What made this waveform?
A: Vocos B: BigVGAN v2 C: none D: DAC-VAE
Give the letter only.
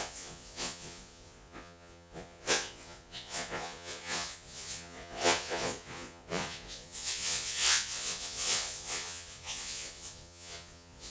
A